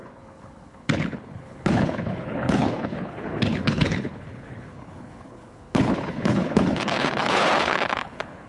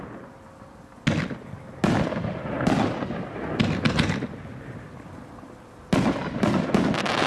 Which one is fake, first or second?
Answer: first